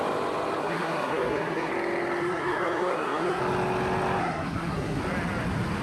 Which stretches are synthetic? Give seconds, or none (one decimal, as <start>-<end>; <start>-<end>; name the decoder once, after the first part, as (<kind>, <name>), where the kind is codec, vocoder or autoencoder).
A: 0.6-1.7 (codec, SNAC); 2.2-3.4; 4.2-5.0